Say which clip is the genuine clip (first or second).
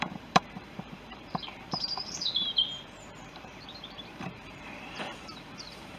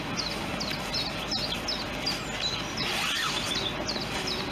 second